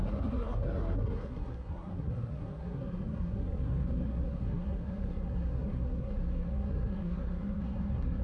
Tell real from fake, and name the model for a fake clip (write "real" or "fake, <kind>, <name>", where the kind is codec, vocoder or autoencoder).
fake, codec, SNAC